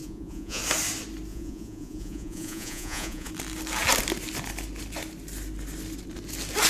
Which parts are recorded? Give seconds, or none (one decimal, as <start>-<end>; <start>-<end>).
0.6-1.3; 3.3-6.7